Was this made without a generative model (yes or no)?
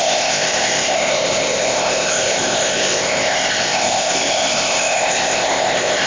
no